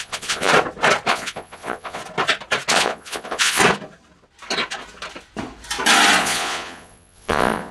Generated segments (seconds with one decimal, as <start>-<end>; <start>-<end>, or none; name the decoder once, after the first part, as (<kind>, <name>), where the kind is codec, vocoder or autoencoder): 0.0-0.5 (vocoder, Vocos); 1.1-2.0; 2.7-3.6; 6.2-7.7